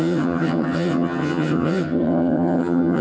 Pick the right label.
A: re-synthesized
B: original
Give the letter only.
A